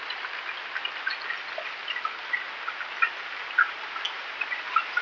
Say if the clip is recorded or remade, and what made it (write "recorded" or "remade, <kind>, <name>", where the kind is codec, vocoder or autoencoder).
recorded